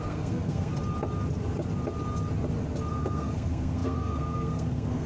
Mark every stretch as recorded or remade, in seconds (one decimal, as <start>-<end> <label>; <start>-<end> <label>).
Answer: 0.0-0.7 remade; 0.7-2.9 recorded; 2.9-5.1 remade